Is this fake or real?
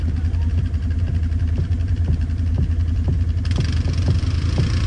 real